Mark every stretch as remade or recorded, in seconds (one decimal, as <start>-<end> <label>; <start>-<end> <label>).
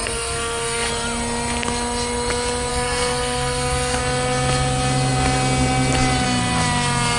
0.0-0.9 remade; 0.9-2.7 recorded; 2.7-4.0 remade; 4.0-7.2 recorded